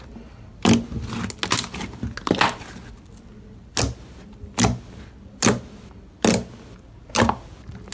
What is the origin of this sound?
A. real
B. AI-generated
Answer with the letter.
A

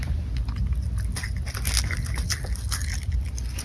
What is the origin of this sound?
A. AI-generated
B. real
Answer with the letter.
B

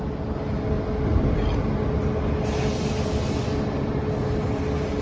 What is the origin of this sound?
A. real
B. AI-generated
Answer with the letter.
A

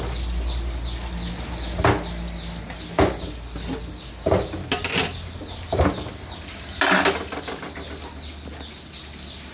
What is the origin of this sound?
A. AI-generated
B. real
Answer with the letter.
B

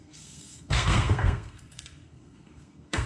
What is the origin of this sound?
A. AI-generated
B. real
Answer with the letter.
A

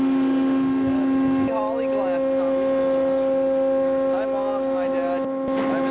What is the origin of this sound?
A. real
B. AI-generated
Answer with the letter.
A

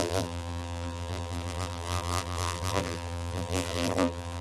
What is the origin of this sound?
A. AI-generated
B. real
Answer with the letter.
A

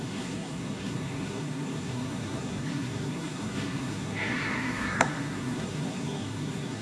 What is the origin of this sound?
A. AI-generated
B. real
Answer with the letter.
A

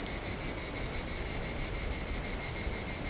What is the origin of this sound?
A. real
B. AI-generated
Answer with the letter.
A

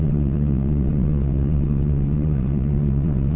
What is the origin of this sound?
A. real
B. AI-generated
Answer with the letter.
B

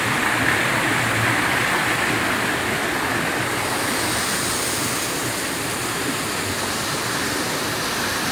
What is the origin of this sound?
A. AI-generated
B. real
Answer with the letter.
B